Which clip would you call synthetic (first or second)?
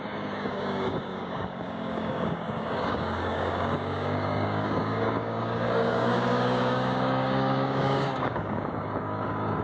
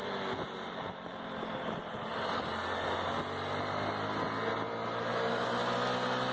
first